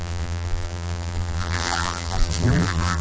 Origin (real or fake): fake